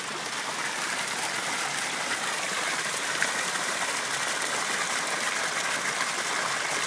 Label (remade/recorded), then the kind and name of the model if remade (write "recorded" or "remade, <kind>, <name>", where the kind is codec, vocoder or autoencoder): recorded